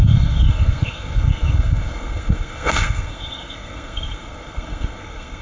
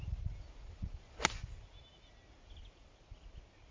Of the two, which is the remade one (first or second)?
first